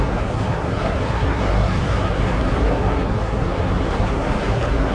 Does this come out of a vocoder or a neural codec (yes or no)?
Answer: yes